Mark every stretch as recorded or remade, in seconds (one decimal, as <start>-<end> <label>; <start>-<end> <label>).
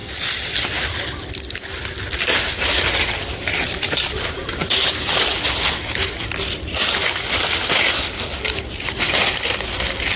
0.0-4.4 recorded; 4.4-5.1 remade; 5.1-10.2 recorded